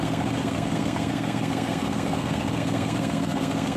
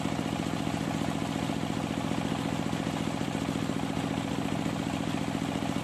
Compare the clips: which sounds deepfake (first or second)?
first